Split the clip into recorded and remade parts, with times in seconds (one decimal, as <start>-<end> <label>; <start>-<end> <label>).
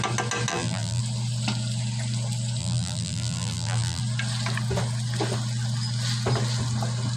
0.0-0.5 recorded; 0.5-1.0 remade; 1.0-2.6 recorded; 2.6-4.0 remade; 4.0-7.2 recorded